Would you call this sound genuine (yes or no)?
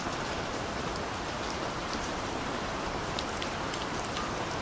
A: no